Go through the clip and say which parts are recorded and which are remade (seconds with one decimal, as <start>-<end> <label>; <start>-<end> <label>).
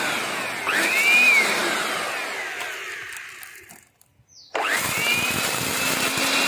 0.0-6.5 recorded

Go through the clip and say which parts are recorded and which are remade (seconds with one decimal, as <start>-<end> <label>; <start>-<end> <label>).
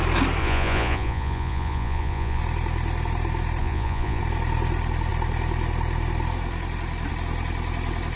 0.0-0.4 recorded; 0.4-2.4 remade; 2.4-3.6 recorded; 3.6-4.2 remade; 4.2-8.2 recorded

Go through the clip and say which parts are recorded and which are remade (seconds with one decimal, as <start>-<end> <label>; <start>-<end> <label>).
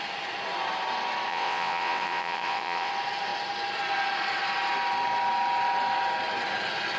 0.0-1.3 recorded; 1.3-2.9 remade; 2.9-7.0 recorded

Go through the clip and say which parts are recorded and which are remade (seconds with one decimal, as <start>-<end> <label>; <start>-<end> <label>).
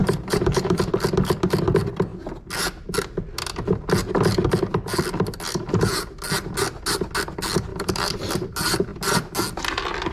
0.0-0.8 remade; 0.8-7.7 recorded; 7.7-8.3 remade; 8.3-10.1 recorded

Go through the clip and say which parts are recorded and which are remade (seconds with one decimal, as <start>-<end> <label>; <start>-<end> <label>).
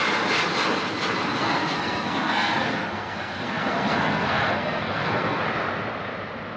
0.0-1.4 recorded; 1.4-5.4 remade; 5.4-6.6 recorded